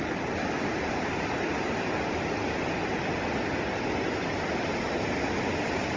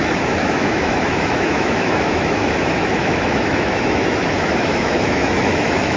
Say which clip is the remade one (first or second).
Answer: second